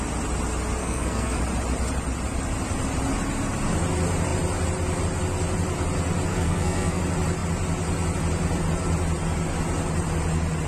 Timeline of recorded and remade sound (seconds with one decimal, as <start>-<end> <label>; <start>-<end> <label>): 0.0-0.8 recorded; 0.8-1.4 remade; 1.4-6.3 recorded; 6.3-7.0 remade; 7.0-10.7 recorded